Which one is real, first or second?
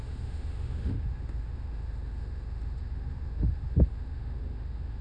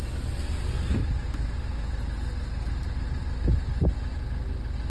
second